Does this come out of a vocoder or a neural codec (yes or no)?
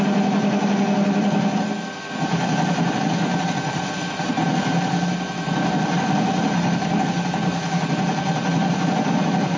no